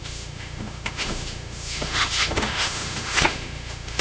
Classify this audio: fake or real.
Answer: fake